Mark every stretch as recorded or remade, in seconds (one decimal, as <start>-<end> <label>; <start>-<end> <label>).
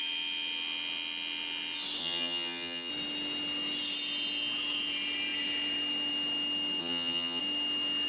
0.0-2.0 recorded; 2.0-2.9 remade; 2.9-6.8 recorded; 6.8-7.4 remade; 7.4-8.1 recorded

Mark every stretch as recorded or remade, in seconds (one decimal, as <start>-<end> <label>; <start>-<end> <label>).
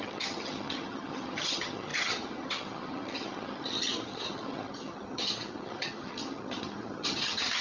0.0-7.6 remade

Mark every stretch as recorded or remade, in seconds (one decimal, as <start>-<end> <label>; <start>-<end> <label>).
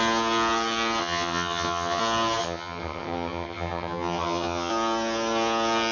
0.0-1.0 recorded; 1.0-2.0 remade; 2.0-2.4 recorded; 2.4-4.7 remade; 4.7-5.9 recorded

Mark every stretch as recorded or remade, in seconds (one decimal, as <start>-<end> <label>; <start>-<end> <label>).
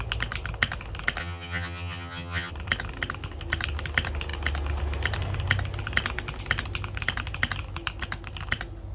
0.0-1.2 recorded; 1.2-2.5 remade; 2.5-8.9 recorded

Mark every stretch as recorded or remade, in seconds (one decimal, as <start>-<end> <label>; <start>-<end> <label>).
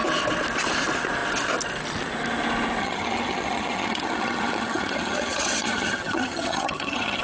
0.0-2.8 recorded; 2.8-7.2 remade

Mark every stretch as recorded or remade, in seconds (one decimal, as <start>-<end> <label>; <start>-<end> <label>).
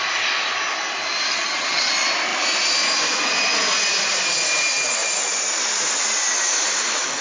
0.0-1.3 recorded; 1.3-1.9 remade; 1.9-7.2 recorded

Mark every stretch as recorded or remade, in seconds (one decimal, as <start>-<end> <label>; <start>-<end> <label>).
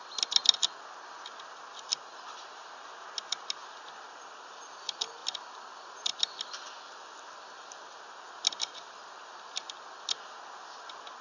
0.0-11.2 recorded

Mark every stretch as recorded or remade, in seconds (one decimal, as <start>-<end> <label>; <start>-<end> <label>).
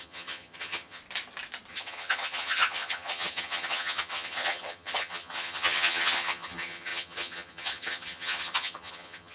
0.0-1.0 remade; 1.0-1.7 recorded; 1.7-9.3 remade